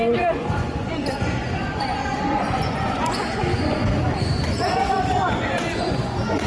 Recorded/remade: remade